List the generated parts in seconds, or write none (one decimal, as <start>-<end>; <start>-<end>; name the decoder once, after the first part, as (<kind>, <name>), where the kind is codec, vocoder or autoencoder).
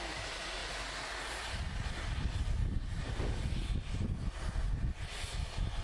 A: none